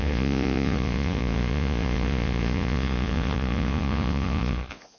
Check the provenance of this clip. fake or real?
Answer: fake